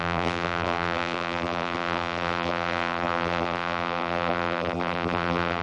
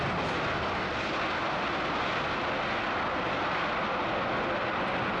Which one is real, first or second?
second